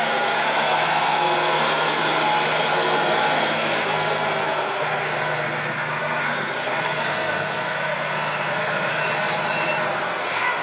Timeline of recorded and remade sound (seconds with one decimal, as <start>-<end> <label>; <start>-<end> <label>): 0.0-2.0 remade; 2.0-2.7 recorded; 2.7-9.0 remade; 9.0-10.2 recorded; 10.2-10.6 remade